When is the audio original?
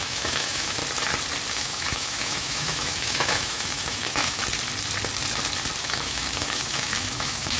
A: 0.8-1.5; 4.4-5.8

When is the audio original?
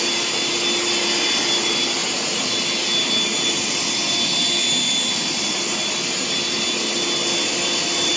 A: 0.0-8.2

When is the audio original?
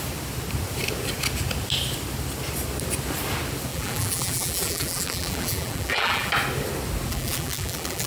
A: 0.0-3.7; 6.3-7.1